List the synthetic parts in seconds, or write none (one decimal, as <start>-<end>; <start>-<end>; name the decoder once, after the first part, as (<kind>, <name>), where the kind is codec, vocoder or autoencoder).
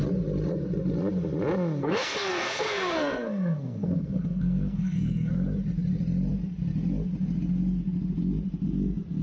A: 1.8-5.3 (codec, SNAC)